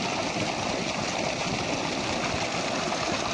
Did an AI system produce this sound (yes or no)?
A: no